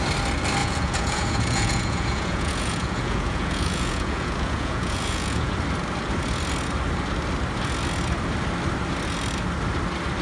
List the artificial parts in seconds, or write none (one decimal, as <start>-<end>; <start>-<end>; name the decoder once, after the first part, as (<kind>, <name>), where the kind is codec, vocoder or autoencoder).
0.6-5.5 (vocoder, Vocos)